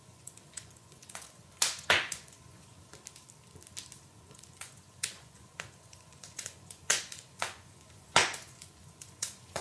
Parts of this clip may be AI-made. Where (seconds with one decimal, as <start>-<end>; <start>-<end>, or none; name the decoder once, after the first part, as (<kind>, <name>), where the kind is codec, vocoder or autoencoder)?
0.0-2.9 (vocoder, Vocos); 4.0-9.6